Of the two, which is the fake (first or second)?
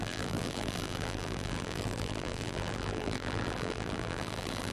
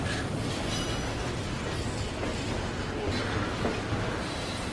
first